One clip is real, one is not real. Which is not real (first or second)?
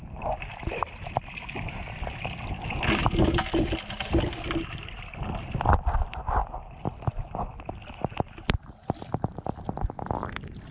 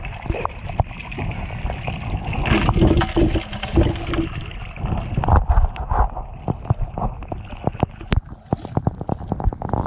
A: first